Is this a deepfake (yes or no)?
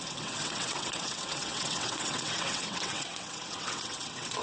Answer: yes